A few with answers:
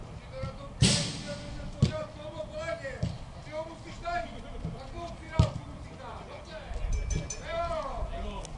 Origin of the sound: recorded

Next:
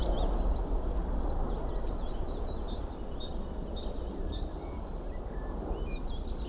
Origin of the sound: remade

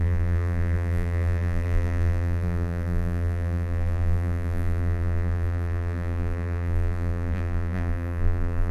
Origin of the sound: remade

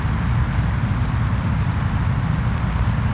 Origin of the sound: recorded